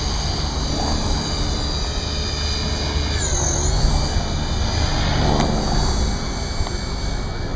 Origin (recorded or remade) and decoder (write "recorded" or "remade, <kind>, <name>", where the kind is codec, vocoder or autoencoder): recorded